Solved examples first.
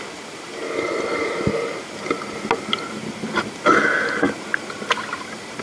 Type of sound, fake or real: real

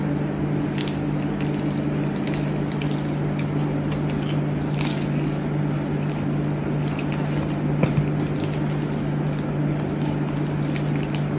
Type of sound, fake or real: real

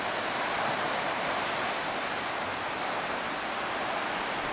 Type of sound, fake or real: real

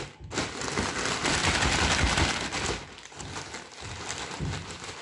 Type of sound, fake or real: real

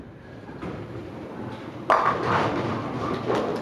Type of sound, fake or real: real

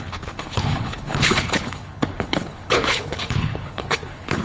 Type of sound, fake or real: fake